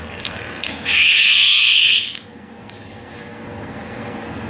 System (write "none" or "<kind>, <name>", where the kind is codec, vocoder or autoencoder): codec, SNAC